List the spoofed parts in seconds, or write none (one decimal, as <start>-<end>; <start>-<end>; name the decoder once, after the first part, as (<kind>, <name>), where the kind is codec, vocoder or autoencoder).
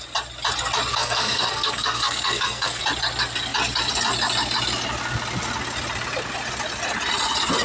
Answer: 0.9-2.8 (codec, SNAC)